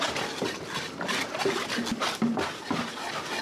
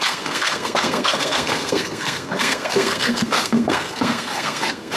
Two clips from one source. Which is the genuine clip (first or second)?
first